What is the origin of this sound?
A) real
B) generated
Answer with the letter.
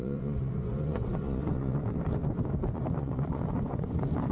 B